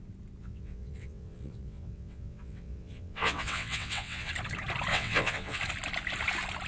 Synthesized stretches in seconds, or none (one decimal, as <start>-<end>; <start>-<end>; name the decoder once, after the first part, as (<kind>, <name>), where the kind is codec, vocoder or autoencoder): 0.4-4.3 (vocoder, WaveNeXt); 4.9-5.6